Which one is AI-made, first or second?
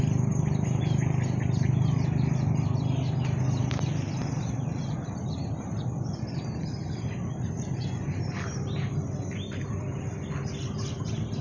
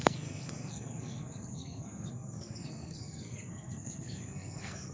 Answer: second